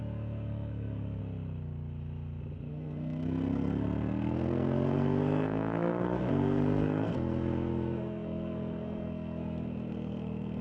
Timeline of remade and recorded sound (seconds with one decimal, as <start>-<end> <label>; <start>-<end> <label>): 0.0-1.2 remade; 1.2-2.7 recorded; 2.7-10.6 remade